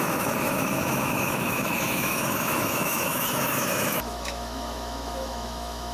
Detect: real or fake fake